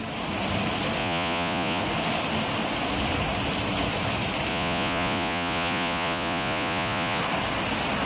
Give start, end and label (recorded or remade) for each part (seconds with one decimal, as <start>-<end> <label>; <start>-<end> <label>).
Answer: 0.0-1.0 recorded; 1.0-1.8 remade; 1.8-4.5 recorded; 4.5-7.2 remade; 7.2-8.1 recorded